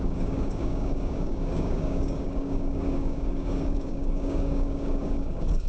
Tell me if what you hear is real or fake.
fake